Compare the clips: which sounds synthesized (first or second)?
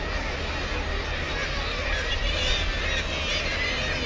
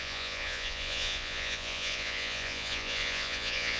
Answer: second